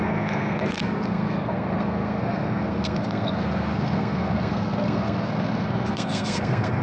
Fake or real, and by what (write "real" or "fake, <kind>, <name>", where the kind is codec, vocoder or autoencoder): fake, codec, SNAC